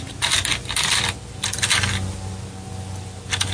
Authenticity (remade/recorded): remade